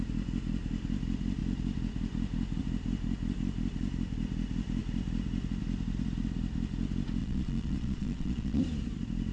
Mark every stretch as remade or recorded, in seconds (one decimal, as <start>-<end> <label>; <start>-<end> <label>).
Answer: 0.0-7.2 recorded; 7.2-8.6 remade; 8.6-9.3 recorded